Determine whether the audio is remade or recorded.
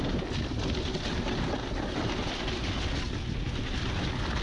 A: recorded